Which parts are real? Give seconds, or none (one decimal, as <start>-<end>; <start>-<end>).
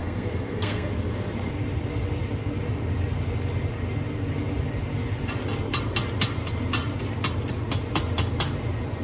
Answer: 0.9-9.0